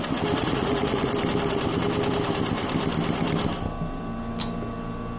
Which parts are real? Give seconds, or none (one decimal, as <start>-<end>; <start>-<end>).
0.0-0.4; 1.1-5.2